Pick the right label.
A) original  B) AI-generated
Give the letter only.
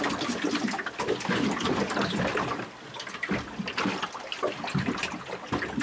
A